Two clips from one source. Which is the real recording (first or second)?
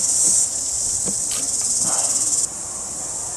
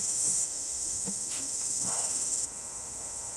first